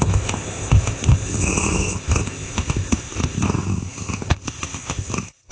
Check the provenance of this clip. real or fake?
fake